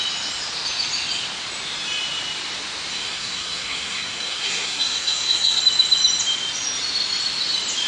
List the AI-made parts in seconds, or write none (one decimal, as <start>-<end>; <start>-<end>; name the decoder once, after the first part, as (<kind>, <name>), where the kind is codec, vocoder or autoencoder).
2.9-5.6 (codec, SNAC)